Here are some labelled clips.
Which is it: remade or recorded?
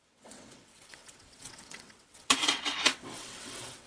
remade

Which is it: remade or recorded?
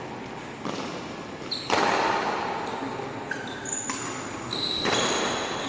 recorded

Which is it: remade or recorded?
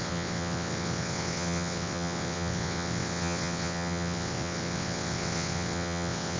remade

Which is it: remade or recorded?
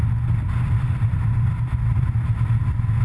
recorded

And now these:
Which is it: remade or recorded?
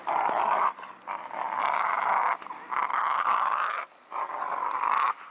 recorded